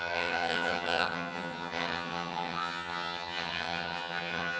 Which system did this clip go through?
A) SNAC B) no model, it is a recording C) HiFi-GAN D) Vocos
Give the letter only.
C